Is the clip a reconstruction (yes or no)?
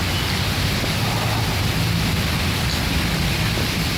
no